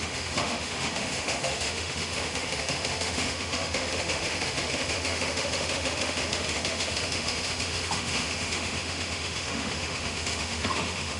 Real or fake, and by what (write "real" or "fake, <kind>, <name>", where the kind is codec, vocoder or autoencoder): fake, autoencoder, DAC-VAE